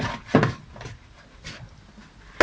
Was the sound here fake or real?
real